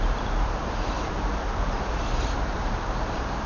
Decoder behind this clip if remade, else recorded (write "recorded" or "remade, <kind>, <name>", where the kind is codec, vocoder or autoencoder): remade, vocoder, BigVGAN v2